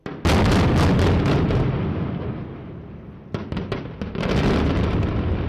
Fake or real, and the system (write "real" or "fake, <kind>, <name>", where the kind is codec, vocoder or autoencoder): real